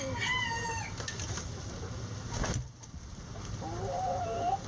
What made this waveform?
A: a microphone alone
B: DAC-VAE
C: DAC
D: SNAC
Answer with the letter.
A